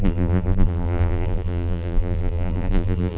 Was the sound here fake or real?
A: fake